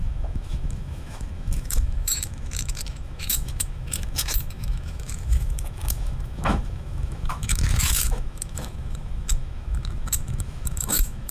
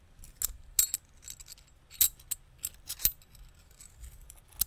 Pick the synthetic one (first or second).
first